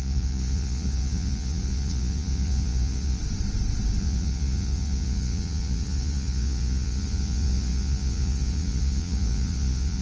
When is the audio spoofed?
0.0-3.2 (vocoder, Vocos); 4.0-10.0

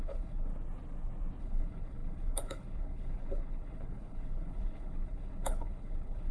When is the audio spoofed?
0.0-0.5 (codec, HILCodec); 1.4-6.3

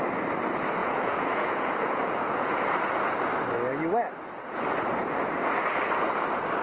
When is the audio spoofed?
0.8-2.7 (vocoder, Vocos)

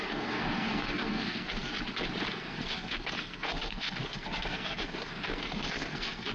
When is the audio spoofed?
0.0-1.7 (codec, SNAC); 2.3-6.3

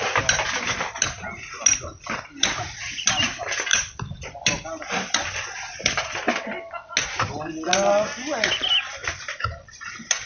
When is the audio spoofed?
3.7-6.0 (vocoder, BigVGAN v2)

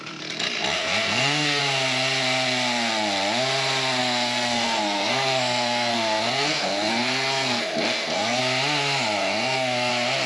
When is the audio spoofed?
0.8-1.6 (codec, SNAC); 4.0-8.4; 9.2-9.9

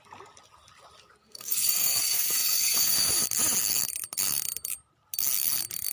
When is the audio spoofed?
1.2-3.1 (codec, SNAC)